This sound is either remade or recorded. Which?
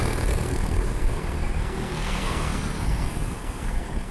remade